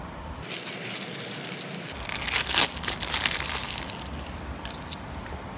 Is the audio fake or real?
real